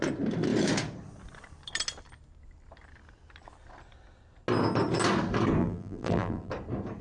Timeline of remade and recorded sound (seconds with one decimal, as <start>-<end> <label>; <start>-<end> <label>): 0.0-5.6 recorded; 5.6-6.5 remade; 6.5-7.0 recorded